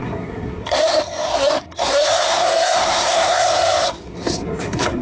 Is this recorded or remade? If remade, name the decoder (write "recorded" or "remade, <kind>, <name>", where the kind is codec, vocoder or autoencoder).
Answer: remade, codec, SNAC